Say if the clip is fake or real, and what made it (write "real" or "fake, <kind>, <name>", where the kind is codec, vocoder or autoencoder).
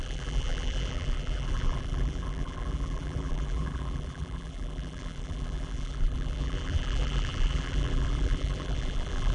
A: fake, vocoder, BigVGAN v2